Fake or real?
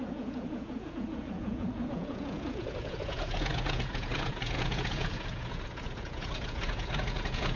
fake